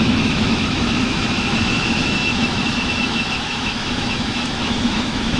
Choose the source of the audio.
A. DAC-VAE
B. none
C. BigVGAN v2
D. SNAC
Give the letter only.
A